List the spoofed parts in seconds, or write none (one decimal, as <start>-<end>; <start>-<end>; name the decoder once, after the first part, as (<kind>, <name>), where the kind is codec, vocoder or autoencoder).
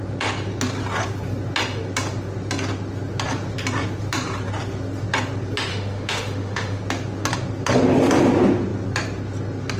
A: 5.7-6.8 (autoencoder, DAC-VAE)